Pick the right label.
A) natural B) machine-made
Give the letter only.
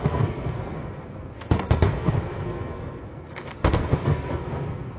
B